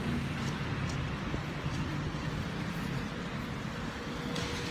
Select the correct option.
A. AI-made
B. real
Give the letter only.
B